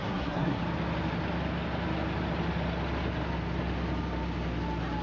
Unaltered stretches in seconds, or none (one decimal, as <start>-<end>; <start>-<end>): 0.6-5.0